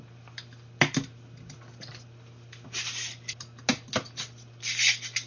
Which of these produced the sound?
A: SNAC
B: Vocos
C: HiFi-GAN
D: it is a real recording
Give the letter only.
D